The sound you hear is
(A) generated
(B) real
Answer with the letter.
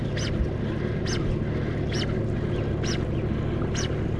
B